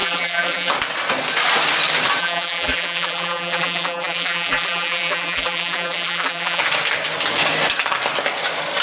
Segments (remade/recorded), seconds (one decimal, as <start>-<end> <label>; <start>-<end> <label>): 0.0-0.7 remade; 0.7-2.2 recorded; 2.2-6.6 remade; 6.6-8.8 recorded